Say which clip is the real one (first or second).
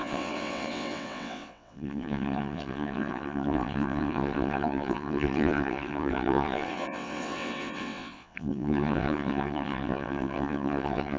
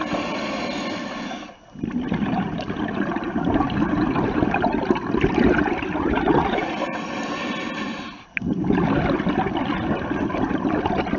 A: second